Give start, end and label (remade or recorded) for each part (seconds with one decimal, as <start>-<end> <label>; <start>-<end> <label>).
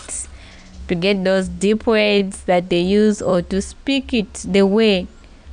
0.0-0.8 recorded; 0.8-1.8 remade; 1.8-2.2 recorded; 2.2-2.7 remade; 2.7-5.5 recorded